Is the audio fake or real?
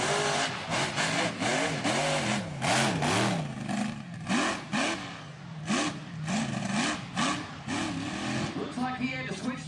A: real